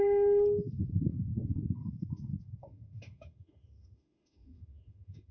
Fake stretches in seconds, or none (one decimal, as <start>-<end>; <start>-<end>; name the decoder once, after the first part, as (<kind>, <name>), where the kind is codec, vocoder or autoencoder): 0.0-5.3 (autoencoder, DAC-VAE)